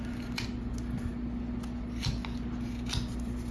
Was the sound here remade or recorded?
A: recorded